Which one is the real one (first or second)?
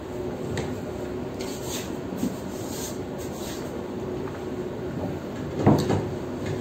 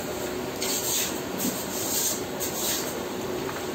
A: first